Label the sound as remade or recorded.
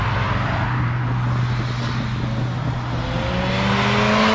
recorded